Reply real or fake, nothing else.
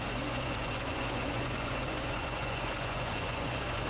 fake